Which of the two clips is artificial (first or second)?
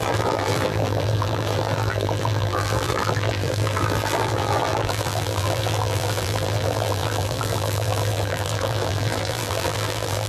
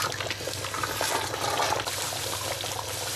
first